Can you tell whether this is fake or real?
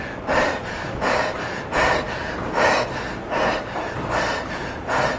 real